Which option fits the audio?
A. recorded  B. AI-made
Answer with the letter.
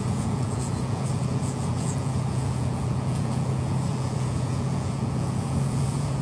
B